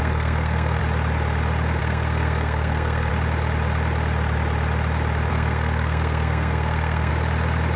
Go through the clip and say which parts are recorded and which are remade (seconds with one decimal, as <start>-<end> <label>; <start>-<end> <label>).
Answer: 0.0-0.8 remade; 0.8-1.8 recorded; 1.8-3.1 remade; 3.1-5.3 recorded; 5.3-7.1 remade; 7.1-7.8 recorded